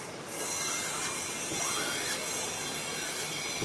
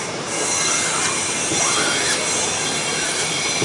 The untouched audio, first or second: first